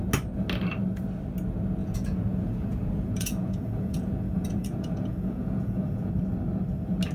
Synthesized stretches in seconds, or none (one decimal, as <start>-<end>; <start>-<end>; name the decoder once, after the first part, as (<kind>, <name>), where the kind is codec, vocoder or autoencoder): 1.8-6.1 (vocoder, Vocos)